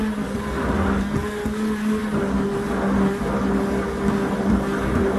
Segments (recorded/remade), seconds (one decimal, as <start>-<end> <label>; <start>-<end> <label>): 0.0-5.2 recorded